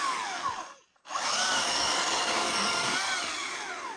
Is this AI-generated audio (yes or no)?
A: yes